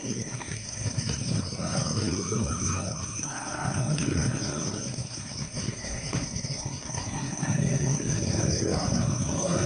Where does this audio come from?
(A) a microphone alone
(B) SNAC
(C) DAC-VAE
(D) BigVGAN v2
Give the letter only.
B